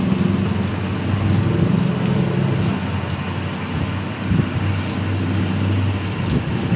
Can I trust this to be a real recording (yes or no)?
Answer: yes